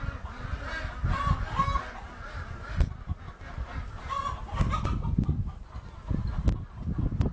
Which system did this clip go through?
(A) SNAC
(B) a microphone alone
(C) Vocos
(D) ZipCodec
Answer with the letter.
B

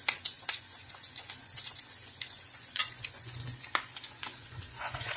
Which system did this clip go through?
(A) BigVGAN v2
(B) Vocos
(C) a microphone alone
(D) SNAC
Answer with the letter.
B